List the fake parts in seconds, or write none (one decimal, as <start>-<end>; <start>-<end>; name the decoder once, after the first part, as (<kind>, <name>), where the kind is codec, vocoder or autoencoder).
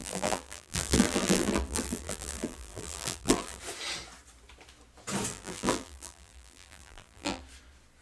0.0-3.6 (vocoder, BigVGAN v2); 5.3-7.4